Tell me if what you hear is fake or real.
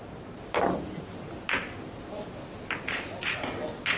real